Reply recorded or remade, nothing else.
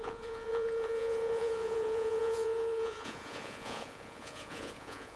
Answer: remade